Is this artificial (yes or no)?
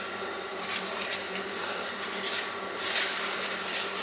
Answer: yes